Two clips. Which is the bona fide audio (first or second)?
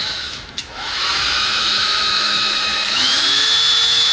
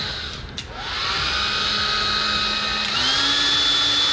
second